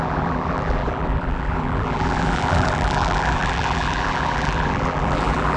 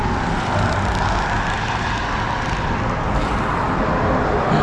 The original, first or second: second